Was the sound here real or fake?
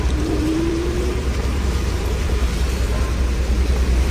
fake